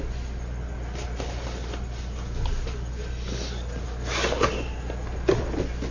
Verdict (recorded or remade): recorded